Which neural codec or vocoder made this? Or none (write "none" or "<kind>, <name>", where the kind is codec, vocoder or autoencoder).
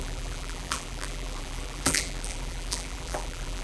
vocoder, BigVGAN v2